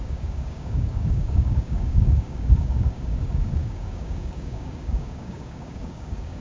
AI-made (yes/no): yes